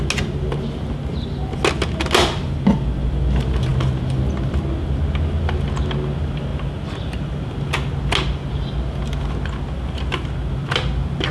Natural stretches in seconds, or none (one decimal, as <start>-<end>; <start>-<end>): 0.0-11.3